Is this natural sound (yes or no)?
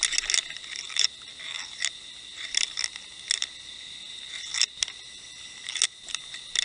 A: yes